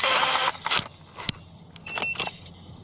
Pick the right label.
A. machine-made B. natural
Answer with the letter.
B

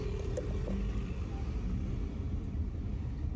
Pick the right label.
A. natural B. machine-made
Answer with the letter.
A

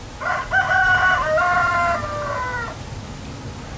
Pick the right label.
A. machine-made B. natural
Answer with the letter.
B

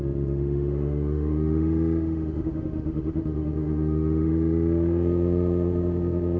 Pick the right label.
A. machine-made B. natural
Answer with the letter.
A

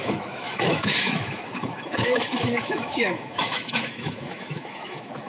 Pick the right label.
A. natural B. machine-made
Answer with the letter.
B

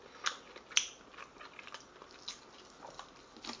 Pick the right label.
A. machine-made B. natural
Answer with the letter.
B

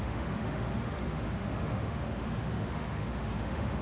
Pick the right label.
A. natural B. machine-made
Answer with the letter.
B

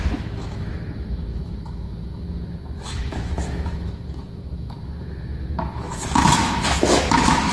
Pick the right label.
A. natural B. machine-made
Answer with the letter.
B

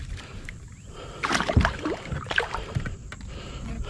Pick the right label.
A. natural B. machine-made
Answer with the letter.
A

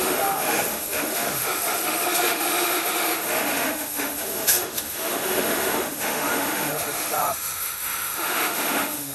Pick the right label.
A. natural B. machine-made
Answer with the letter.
B